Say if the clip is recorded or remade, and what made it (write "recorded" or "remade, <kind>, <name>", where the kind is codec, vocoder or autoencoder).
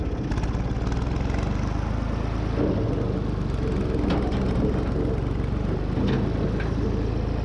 recorded